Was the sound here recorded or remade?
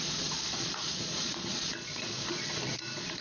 remade